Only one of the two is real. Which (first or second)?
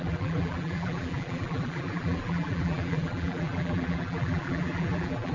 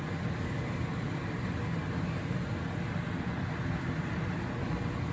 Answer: second